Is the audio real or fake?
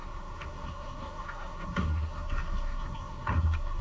fake